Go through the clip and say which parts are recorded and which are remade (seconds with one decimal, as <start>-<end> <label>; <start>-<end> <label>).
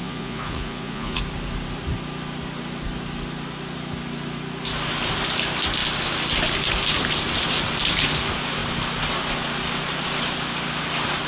0.0-1.2 remade; 1.2-11.3 recorded